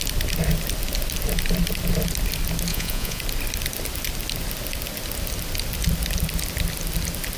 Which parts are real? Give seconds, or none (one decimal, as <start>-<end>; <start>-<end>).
0.0-2.7; 3.2-7.4